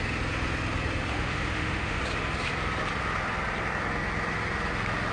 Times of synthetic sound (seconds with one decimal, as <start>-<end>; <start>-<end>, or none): 1.1-2.0